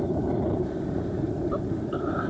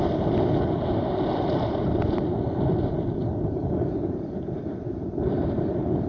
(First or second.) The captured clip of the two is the second